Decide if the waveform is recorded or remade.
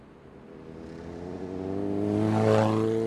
recorded